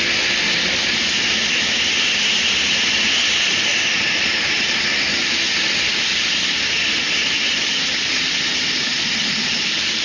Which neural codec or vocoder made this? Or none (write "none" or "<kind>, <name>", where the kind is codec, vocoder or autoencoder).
none